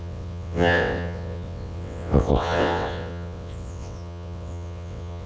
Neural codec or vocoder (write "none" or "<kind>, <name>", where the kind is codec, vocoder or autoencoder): vocoder, WaveNeXt